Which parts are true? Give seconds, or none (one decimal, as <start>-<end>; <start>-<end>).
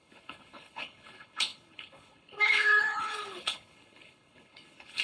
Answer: none